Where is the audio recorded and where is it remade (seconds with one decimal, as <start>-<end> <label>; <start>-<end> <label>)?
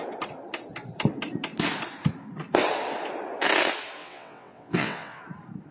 0.0-4.0 recorded; 4.0-5.2 remade; 5.2-5.7 recorded